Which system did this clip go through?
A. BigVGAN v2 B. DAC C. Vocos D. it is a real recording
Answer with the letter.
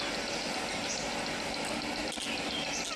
D